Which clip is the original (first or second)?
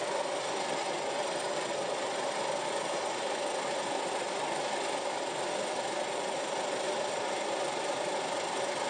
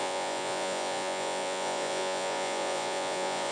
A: first